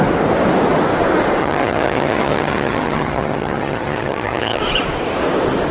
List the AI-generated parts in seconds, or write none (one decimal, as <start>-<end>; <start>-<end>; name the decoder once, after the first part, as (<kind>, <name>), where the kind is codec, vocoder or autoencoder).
1.4-4.6 (vocoder, HiFi-GAN)